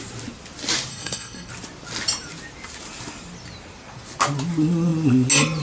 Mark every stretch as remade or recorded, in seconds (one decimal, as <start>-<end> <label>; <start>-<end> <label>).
0.0-0.9 recorded; 0.9-1.5 remade; 1.5-5.6 recorded